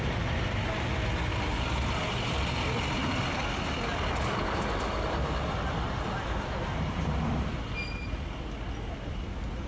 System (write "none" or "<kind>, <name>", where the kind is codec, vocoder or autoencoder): none